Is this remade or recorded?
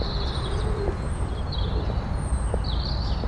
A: recorded